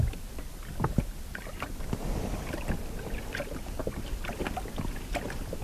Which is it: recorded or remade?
recorded